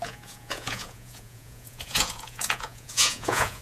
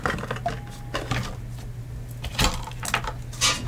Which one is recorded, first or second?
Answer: second